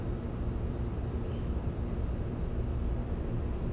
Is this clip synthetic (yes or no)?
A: no